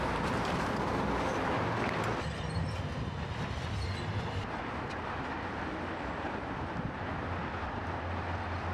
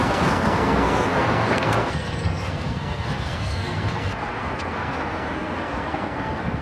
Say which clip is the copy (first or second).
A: second